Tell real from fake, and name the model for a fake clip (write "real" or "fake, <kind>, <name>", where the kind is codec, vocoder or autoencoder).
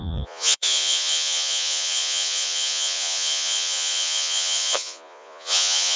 fake, vocoder, Vocos